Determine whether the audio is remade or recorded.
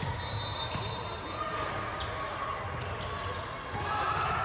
recorded